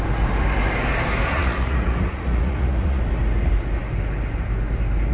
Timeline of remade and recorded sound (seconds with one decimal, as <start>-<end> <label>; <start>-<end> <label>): 0.0-1.3 recorded; 1.3-3.0 remade; 3.0-5.1 recorded